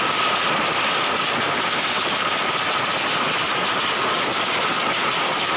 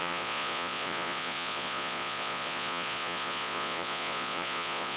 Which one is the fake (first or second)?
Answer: second